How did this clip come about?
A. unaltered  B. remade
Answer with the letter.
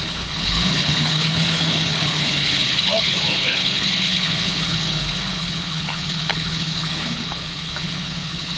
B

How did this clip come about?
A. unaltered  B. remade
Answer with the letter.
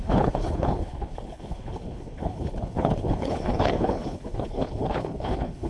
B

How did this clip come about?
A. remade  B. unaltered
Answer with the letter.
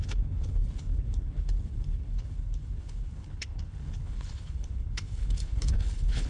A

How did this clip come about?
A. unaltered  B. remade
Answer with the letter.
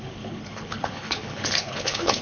B